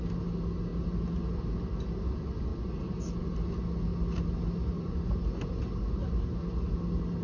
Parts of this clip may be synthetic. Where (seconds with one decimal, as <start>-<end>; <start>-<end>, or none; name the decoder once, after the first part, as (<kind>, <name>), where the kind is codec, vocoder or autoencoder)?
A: none